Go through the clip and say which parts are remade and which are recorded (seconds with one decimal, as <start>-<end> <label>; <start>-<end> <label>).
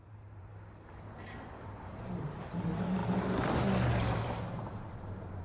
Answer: 0.0-0.5 remade; 0.5-1.9 recorded; 1.9-3.0 remade; 3.0-3.9 recorded; 3.9-5.4 remade